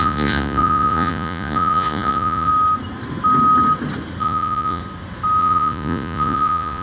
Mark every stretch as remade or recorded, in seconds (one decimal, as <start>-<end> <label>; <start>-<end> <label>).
0.0-2.5 remade; 2.5-4.2 recorded; 4.2-4.8 remade; 4.8-5.4 recorded; 5.4-6.8 remade